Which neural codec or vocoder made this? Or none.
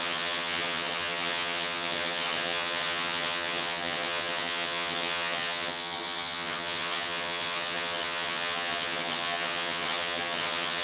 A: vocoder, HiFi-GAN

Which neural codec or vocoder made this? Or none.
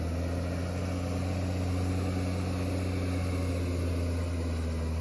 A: none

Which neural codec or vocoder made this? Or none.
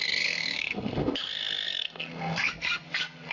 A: codec, SNAC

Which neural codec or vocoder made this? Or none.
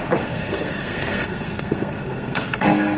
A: codec, SNAC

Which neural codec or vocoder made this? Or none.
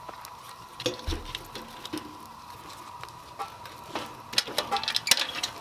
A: none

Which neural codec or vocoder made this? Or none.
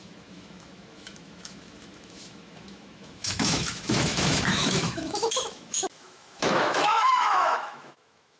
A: autoencoder, DAC-VAE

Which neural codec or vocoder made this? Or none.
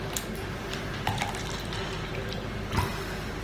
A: none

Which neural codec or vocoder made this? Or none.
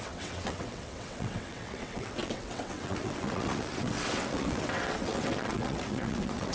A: vocoder, WaveNeXt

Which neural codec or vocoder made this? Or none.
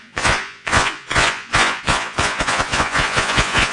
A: vocoder, Vocos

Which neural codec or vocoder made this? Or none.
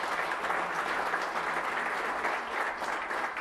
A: none